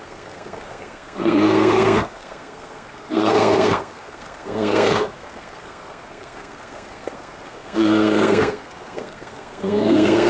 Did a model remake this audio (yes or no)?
yes